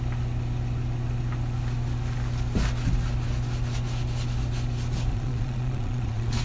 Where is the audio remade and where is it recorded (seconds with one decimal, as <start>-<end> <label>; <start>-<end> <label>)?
0.0-5.1 recorded; 5.1-6.4 remade